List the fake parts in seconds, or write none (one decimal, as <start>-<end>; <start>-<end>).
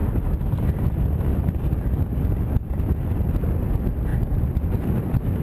none